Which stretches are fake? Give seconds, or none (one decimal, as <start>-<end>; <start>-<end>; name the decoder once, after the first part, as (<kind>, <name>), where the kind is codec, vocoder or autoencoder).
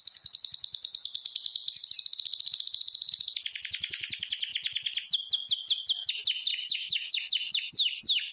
6.5-7.2 (codec, DAC)